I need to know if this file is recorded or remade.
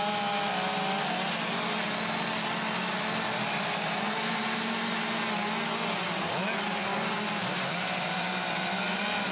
recorded